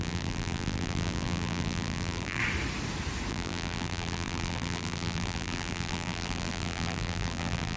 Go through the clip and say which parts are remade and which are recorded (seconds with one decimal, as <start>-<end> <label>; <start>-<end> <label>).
0.0-2.4 remade; 2.4-3.3 recorded; 3.3-7.8 remade